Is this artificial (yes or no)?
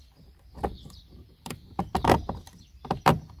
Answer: yes